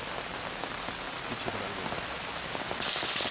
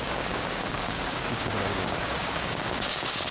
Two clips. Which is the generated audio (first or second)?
second